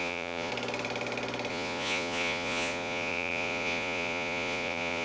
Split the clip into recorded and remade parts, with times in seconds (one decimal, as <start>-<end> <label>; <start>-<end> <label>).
0.0-0.5 remade; 0.5-1.5 recorded; 1.5-5.0 remade